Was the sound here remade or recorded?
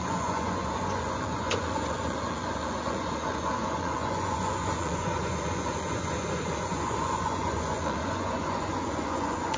remade